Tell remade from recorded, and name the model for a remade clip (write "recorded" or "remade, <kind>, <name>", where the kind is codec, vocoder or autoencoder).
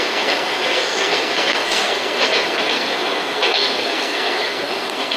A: remade, codec, SNAC